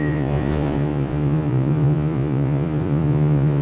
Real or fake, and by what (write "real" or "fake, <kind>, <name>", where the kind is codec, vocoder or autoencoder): fake, vocoder, Vocos